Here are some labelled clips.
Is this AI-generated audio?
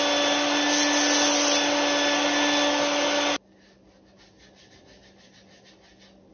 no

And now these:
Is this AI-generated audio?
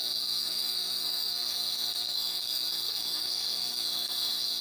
yes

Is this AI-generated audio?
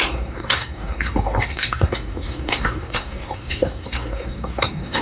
yes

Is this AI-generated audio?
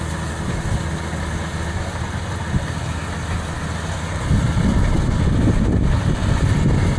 no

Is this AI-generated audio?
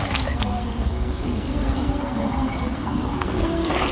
yes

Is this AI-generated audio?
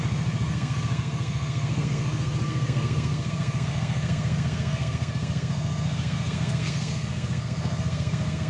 yes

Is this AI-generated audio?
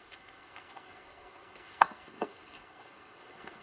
yes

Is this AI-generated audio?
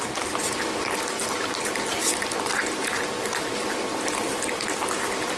no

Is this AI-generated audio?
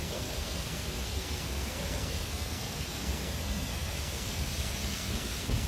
yes